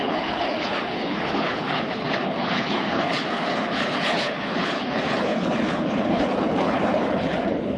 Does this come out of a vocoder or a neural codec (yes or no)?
yes